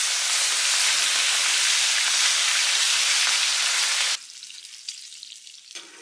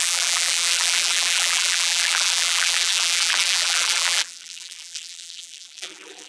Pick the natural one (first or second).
first